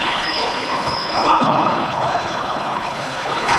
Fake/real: fake